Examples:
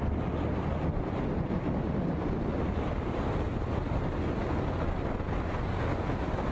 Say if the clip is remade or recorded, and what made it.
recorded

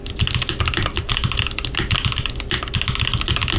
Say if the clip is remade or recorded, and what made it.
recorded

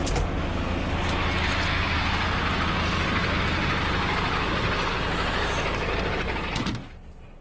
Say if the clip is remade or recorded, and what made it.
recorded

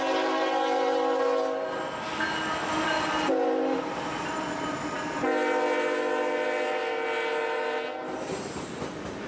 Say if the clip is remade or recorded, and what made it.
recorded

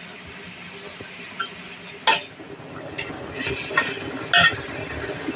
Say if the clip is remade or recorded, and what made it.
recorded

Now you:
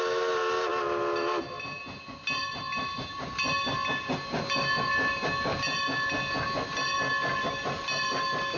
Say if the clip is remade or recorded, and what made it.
recorded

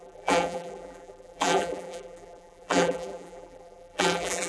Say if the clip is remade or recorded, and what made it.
remade, vocoder, BigVGAN v2